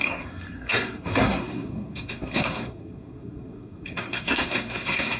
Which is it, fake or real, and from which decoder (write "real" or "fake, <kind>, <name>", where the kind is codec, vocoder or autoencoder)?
fake, codec, SNAC